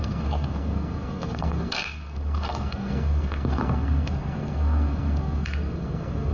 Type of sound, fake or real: fake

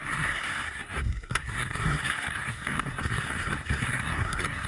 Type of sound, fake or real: fake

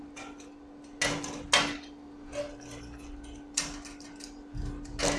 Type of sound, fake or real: real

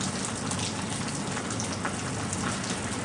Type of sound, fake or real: real